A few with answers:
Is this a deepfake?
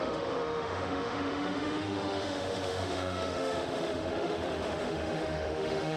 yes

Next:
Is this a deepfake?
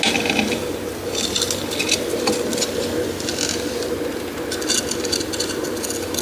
no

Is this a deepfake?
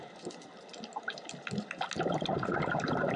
no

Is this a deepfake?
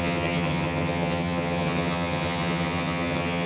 yes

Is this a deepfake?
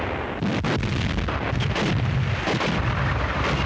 no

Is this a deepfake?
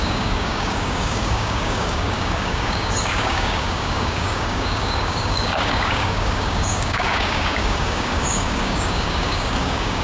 yes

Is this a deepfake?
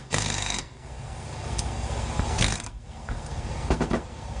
yes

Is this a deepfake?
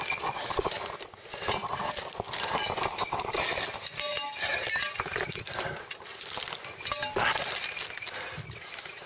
no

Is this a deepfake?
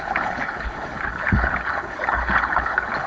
yes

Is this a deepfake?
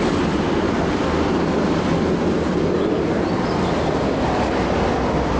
no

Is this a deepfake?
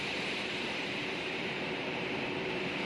yes